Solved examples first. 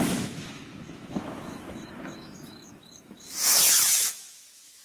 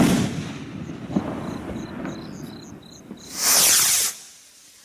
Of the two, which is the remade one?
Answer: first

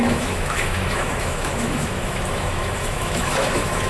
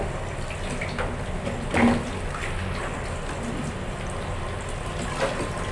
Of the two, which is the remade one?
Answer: first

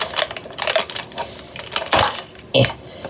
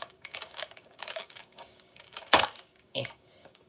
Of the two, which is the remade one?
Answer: second